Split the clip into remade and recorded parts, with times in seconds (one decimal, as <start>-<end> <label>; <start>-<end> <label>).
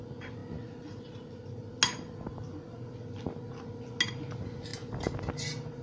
0.0-5.8 recorded